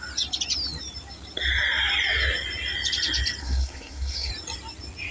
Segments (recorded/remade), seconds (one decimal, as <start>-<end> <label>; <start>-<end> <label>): 0.0-3.4 recorded; 3.4-4.3 remade; 4.3-5.1 recorded